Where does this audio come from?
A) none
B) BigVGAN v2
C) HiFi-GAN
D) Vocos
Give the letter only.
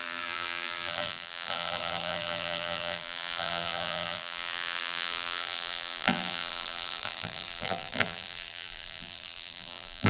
B